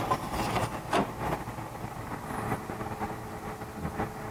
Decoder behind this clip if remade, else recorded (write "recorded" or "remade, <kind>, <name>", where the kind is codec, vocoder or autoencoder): recorded